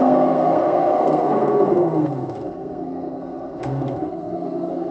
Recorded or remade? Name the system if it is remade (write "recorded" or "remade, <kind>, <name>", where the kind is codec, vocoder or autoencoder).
remade, codec, SNAC